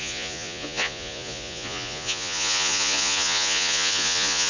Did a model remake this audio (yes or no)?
yes